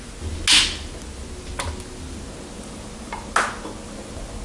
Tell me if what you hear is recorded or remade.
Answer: recorded